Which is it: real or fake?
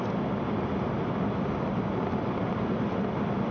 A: real